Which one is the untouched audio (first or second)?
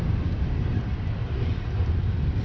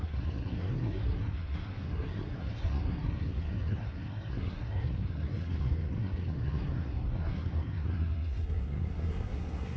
first